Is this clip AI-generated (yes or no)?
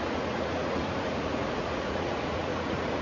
yes